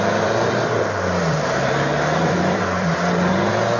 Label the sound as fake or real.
fake